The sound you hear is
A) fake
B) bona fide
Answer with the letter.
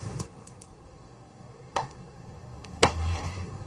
A